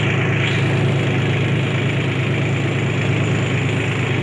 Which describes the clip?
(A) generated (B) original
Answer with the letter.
B